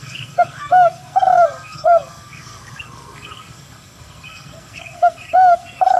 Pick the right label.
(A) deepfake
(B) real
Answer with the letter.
A